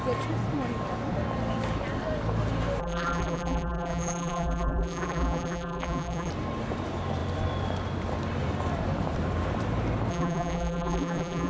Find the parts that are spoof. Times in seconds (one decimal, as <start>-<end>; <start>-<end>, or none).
2.8-6.3; 10.1-11.5